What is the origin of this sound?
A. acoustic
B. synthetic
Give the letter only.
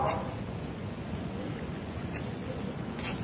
B